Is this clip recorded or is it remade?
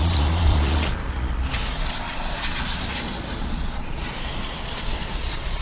remade